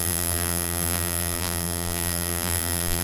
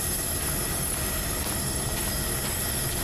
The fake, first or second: first